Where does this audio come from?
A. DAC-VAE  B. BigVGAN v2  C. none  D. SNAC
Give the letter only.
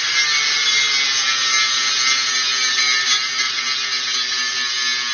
C